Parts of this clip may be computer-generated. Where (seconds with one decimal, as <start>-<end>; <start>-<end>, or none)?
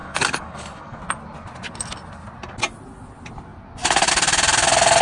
0.0-1.0